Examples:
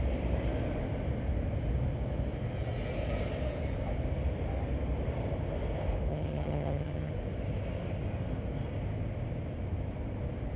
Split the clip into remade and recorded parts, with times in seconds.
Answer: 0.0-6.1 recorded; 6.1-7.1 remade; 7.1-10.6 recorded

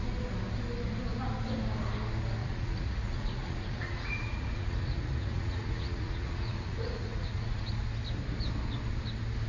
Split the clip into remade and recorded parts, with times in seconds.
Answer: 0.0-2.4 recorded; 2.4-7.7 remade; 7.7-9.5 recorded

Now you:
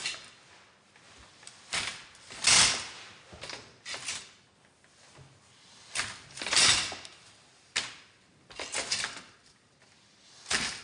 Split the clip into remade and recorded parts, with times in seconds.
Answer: 0.0-10.8 recorded